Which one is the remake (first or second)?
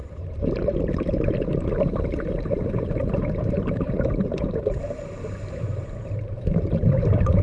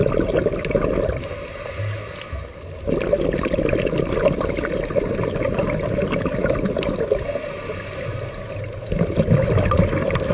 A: first